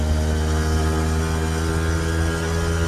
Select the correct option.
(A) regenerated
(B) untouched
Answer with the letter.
B